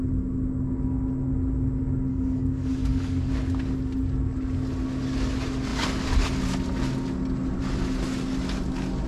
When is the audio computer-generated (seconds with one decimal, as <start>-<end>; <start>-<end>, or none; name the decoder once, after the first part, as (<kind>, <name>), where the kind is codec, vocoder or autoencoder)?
2.1-3.3 (codec, DAC)